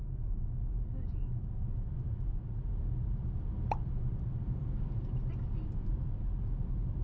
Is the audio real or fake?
real